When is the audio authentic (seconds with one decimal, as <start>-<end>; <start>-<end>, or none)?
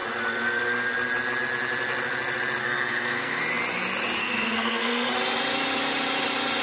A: 0.0-2.6; 3.4-4.2; 5.1-6.6